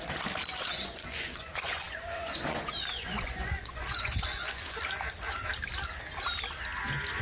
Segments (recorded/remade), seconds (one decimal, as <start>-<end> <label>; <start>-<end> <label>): 0.0-0.5 recorded; 0.5-4.8 remade; 4.8-7.2 recorded